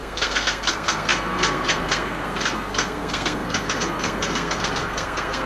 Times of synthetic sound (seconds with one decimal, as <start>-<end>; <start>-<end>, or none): 0.0-5.5